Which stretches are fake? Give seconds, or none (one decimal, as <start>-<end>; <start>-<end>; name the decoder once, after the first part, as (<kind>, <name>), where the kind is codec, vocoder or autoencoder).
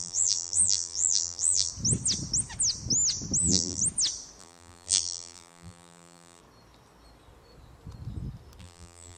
0.0-1.7 (vocoder, BigVGAN v2); 3.4-3.8; 4.4-6.4; 8.6-9.2